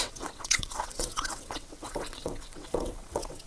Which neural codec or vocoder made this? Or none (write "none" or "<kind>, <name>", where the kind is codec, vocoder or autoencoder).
vocoder, WaveNeXt